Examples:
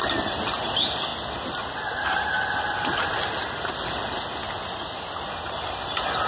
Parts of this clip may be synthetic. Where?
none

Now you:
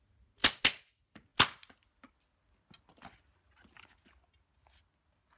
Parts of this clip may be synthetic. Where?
none

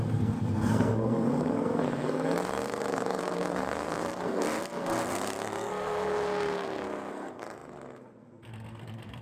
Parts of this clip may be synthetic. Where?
0.0-9.2 (codec, SNAC)

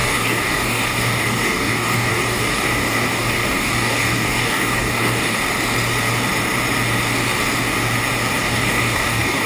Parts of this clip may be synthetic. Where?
0.0-5.4 (codec, DAC); 8.4-9.5

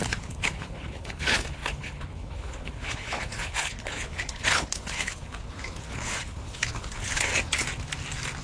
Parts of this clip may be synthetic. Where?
0.0-7.3 (codec, HILCodec)